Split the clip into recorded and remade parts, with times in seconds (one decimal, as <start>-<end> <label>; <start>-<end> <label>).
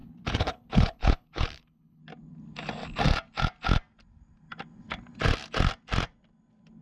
0.0-2.0 remade; 2.0-6.8 recorded